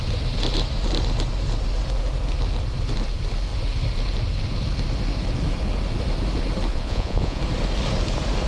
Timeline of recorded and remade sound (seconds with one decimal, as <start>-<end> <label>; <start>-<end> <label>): 0.0-6.7 recorded; 6.7-7.4 remade; 7.4-8.5 recorded